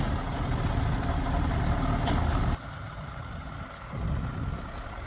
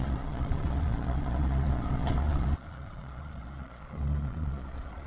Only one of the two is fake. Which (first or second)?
second